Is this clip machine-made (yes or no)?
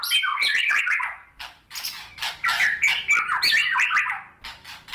no